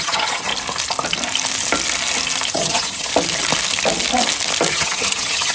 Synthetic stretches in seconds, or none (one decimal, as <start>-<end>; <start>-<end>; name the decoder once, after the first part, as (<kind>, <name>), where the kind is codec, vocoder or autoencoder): 0.0-0.5 (vocoder, HiFi-GAN); 2.5-3.1; 4.7-5.5